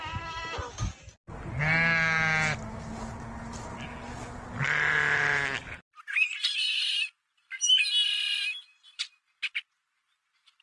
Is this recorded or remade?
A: recorded